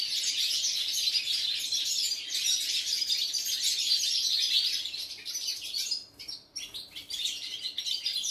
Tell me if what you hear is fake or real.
real